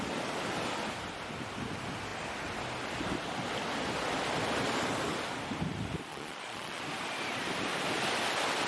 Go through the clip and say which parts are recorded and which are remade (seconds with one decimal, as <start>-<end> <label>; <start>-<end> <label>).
0.0-6.1 recorded; 6.1-6.8 remade; 6.8-8.7 recorded